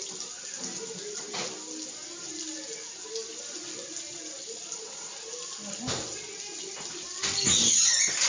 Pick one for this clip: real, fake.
real